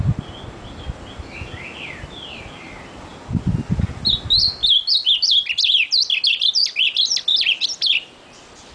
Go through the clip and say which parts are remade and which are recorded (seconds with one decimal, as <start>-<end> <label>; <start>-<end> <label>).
0.0-8.7 recorded